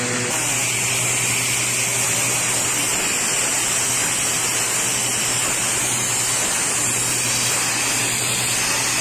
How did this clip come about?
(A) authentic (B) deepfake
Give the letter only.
A